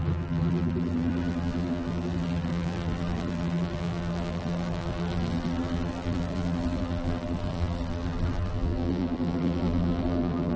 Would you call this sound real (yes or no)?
no